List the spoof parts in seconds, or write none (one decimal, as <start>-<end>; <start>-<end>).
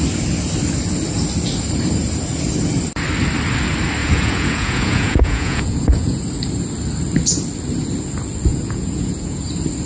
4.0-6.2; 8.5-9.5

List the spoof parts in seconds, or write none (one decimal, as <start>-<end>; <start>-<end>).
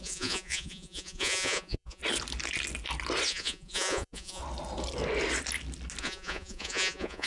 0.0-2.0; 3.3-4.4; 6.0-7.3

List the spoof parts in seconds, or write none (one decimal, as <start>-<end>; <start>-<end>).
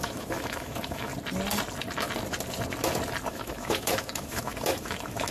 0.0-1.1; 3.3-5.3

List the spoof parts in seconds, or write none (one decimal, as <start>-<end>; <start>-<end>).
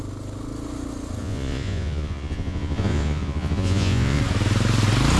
1.2-4.2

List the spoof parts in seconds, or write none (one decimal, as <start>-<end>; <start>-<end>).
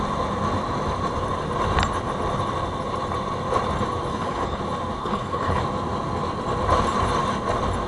4.1-4.6; 5.0-5.6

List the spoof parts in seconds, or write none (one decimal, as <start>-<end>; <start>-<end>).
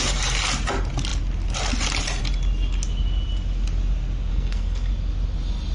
4.3-4.9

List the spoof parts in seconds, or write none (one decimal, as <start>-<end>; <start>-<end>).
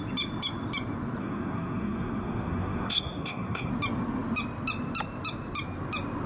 1.2-3.7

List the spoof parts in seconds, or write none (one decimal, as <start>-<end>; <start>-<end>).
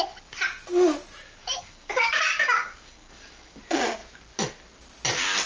1.4-3.6